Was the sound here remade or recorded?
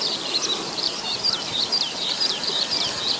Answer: remade